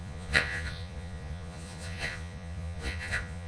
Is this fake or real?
fake